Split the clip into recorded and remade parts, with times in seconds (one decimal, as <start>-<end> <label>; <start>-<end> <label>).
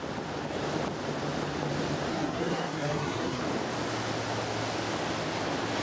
0.0-2.1 recorded; 2.1-3.4 remade; 3.4-5.8 recorded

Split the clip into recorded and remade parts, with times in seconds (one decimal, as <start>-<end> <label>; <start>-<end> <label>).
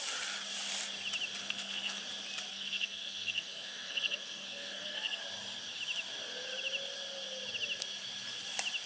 0.0-1.4 recorded; 1.4-2.0 remade; 2.0-2.5 recorded; 2.5-5.2 remade; 5.2-8.9 recorded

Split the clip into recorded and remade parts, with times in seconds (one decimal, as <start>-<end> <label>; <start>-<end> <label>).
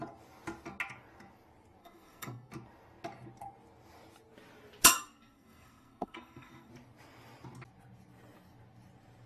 0.0-1.8 recorded; 1.8-2.5 remade; 2.5-4.9 recorded; 4.9-6.7 remade; 6.7-9.3 recorded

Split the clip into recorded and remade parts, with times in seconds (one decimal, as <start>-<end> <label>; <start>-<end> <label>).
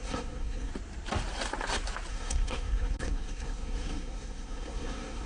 0.0-0.7 remade; 0.7-2.1 recorded; 2.1-5.3 remade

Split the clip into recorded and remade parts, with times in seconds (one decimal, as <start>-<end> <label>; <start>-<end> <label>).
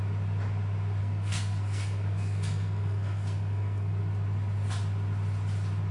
0.0-1.0 recorded; 1.0-4.0 remade; 4.0-5.9 recorded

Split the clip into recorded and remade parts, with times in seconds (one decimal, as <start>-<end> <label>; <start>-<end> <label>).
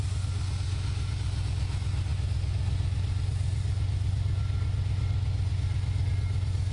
0.0-6.7 recorded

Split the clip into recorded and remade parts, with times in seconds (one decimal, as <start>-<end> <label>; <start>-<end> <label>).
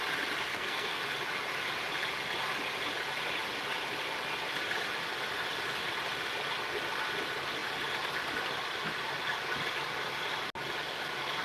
0.0-0.5 recorded; 0.5-1.0 remade; 1.0-11.4 recorded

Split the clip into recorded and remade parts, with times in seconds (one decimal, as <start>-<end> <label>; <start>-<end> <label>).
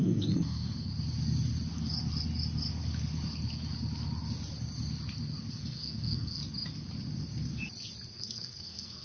0.0-0.9 remade; 0.9-5.5 recorded; 5.5-6.4 remade; 6.4-8.1 recorded; 8.1-9.0 remade